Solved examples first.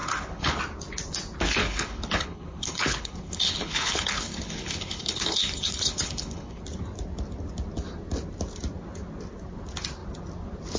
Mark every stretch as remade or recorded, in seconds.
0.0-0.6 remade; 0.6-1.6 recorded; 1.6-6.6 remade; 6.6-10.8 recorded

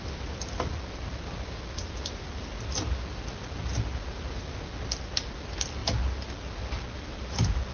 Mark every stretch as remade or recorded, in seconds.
0.0-7.7 recorded

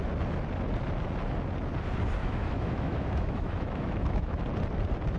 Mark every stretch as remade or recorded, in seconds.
0.0-2.2 recorded; 2.2-4.4 remade; 4.4-5.2 recorded

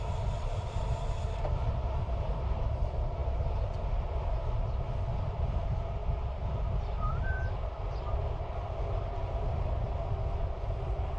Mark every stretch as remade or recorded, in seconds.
0.0-3.2 remade; 3.2-5.2 recorded; 5.2-11.2 remade

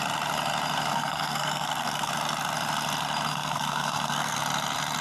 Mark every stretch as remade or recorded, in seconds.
0.0-0.9 recorded; 0.9-2.1 remade; 2.1-3.3 recorded; 3.3-4.4 remade; 4.4-5.0 recorded

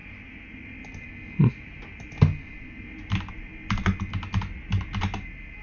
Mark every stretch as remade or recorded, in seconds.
0.0-5.6 recorded

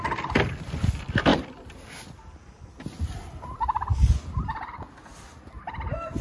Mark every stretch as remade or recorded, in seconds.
0.0-6.2 recorded